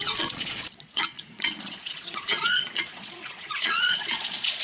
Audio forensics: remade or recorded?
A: remade